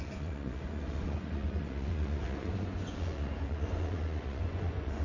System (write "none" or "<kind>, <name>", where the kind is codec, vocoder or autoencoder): vocoder, Vocos